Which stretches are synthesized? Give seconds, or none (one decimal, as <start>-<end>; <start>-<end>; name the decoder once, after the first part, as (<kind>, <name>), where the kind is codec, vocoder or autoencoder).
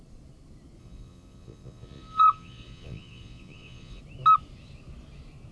0.8-4.0 (vocoder, Vocos)